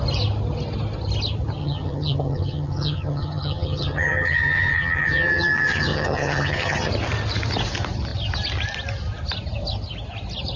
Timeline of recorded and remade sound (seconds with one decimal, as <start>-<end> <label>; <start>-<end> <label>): 0.0-1.6 recorded; 1.6-6.9 remade; 6.9-10.6 recorded

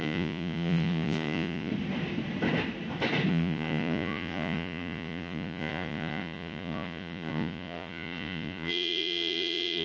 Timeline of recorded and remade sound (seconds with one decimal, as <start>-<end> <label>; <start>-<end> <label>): 0.0-1.7 remade; 1.7-3.3 recorded; 3.3-9.8 remade

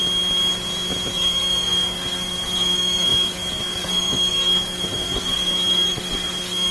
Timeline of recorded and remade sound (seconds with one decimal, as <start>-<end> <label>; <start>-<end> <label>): 0.0-1.1 recorded; 1.1-6.7 remade

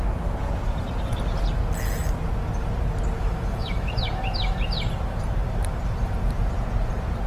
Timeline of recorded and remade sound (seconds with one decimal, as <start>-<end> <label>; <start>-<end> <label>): 0.0-3.2 recorded; 3.2-3.9 remade; 3.9-7.3 recorded

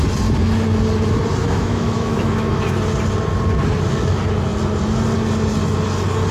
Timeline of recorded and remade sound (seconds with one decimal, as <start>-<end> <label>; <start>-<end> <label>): 0.0-1.4 recorded; 1.4-2.8 remade; 2.8-6.3 recorded

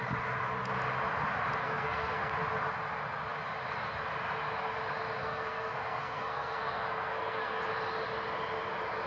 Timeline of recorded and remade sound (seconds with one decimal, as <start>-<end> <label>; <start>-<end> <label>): 0.0-1.6 recorded; 1.6-2.3 remade; 2.3-5.2 recorded; 5.2-7.6 remade; 7.6-9.1 recorded

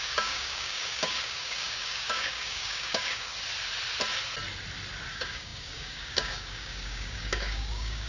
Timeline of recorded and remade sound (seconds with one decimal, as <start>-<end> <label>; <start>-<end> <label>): 0.0-3.3 remade; 3.3-5.1 recorded; 5.1-8.1 remade